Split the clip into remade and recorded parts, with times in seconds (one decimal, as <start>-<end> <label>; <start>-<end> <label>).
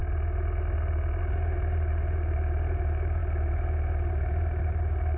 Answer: 0.0-1.2 recorded; 1.2-5.2 remade